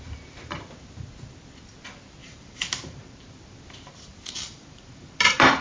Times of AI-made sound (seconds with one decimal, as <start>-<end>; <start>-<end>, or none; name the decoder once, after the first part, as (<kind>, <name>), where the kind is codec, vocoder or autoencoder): 2.2-3.1 (vocoder, BigVGAN v2); 4.1-5.6